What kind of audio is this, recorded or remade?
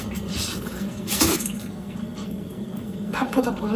remade